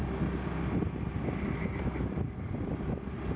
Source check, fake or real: real